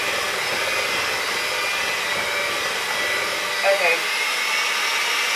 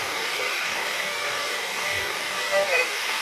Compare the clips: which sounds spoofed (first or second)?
second